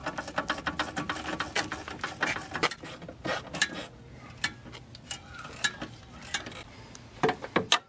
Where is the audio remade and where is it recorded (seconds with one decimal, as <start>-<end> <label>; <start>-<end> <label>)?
0.0-7.9 recorded